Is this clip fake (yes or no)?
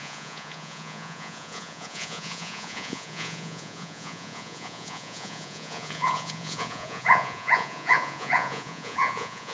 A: yes